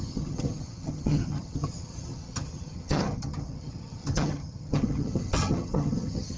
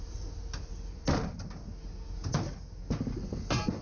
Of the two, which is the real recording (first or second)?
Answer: second